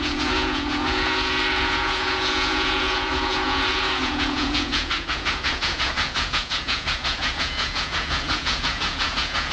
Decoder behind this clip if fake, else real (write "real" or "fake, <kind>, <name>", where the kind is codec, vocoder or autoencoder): fake, vocoder, Vocos